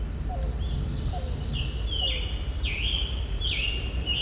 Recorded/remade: recorded